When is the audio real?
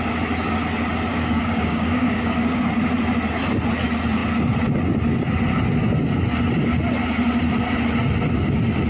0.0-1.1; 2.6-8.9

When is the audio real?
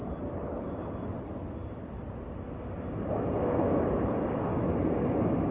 0.0-5.5